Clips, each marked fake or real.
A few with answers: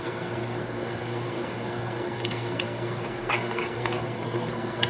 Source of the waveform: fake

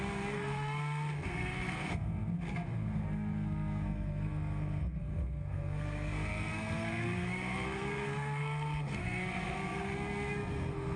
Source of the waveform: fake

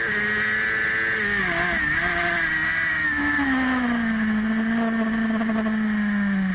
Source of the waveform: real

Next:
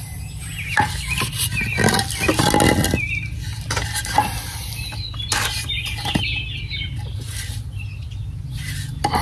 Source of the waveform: real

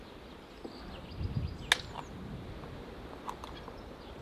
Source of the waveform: real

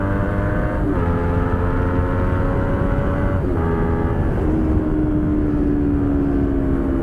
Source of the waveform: real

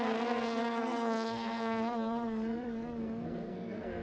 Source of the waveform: fake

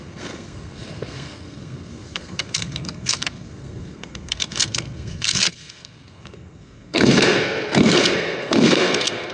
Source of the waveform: fake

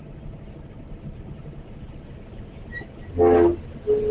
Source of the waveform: real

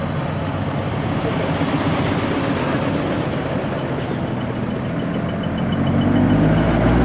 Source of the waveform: real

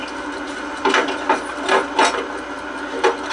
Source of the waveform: real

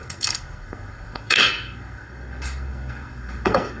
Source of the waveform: fake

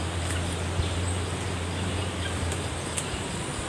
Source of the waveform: real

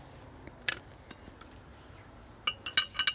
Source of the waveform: real